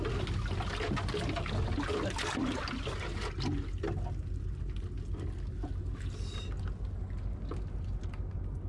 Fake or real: real